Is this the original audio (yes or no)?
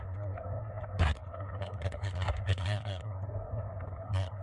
no